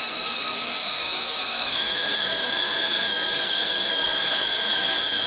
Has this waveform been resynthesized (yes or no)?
yes